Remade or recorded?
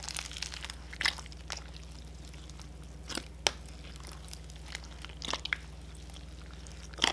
recorded